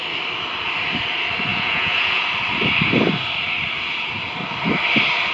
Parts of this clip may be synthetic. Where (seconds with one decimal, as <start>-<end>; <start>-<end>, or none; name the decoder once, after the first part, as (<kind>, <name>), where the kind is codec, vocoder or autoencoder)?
1.5-2.2 (vocoder, Vocos)